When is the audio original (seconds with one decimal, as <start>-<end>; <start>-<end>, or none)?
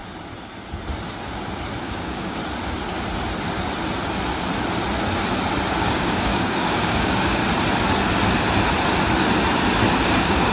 0.0-1.8; 2.4-5.7; 7.4-10.0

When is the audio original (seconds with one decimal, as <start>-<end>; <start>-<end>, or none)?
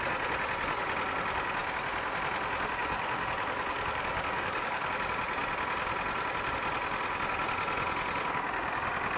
0.0-2.8; 4.9-9.2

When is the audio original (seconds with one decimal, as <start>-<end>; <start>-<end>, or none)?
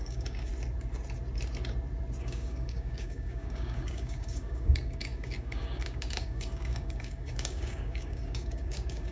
0.5-2.2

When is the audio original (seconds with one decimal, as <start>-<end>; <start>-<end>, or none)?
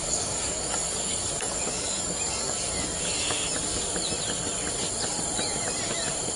3.1-6.4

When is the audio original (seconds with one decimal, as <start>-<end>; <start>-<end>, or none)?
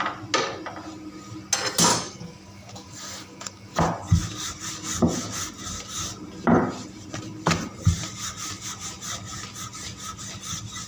0.0-1.9; 3.8-10.9